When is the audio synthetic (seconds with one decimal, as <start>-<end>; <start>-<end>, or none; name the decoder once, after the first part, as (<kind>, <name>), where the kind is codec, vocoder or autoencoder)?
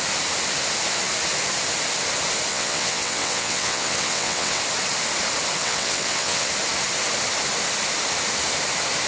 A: 2.5-4.6 (vocoder, WaveNeXt); 5.6-6.5